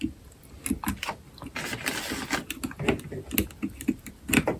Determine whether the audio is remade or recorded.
recorded